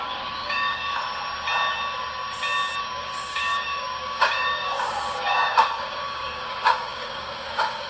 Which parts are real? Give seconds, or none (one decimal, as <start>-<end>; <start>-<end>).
0.8-2.8